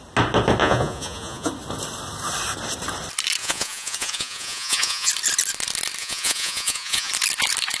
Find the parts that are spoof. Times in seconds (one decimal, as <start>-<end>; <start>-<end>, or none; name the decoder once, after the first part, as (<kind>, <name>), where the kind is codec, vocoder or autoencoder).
0.6-1.5 (vocoder, Vocos); 3.4-5.1; 6.0-7.1